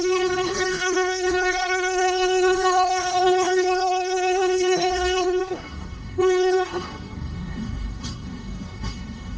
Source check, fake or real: fake